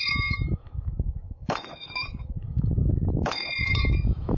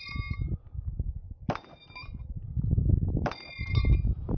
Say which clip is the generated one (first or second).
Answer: first